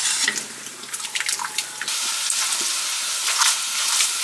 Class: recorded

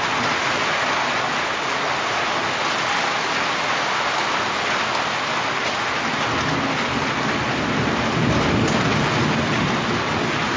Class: recorded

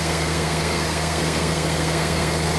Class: remade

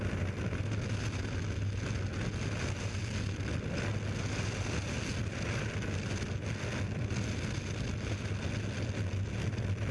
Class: recorded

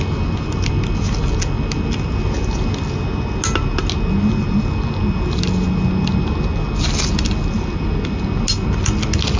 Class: recorded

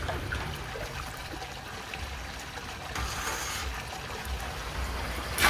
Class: recorded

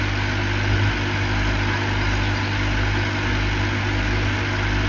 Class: recorded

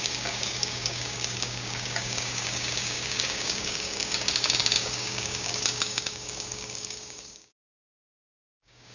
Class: remade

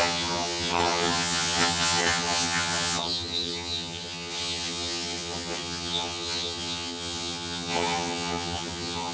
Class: remade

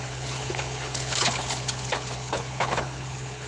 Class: remade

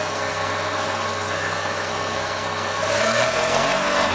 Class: remade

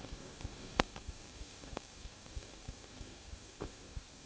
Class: remade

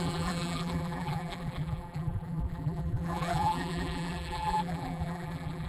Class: remade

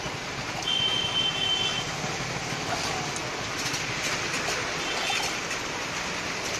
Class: recorded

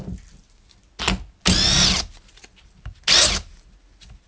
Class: recorded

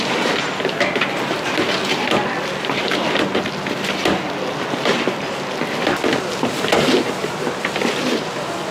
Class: recorded